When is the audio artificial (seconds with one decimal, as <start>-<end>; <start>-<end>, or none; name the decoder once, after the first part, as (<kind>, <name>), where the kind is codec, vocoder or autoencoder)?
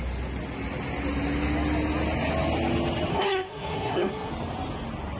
3.1-4.3 (codec, SNAC)